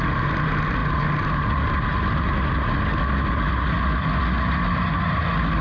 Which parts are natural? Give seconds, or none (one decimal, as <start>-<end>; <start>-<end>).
0.0-5.6